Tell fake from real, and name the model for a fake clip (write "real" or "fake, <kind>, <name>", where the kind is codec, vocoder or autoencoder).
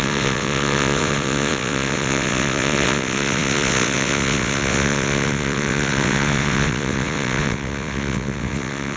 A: fake, vocoder, WaveNeXt